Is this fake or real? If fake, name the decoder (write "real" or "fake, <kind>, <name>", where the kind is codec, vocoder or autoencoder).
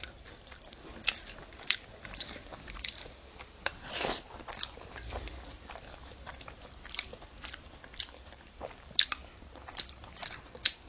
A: real